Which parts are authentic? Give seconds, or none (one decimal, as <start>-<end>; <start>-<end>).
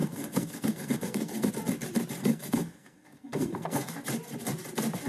1.5-2.2; 3.9-5.1